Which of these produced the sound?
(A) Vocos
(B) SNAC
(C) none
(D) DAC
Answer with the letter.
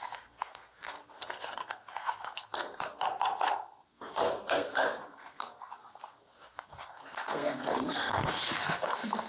B